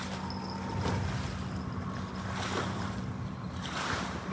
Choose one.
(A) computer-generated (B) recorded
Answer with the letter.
B